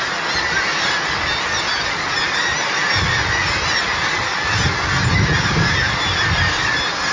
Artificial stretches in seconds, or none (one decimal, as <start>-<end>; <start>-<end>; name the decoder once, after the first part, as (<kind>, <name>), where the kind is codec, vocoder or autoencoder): none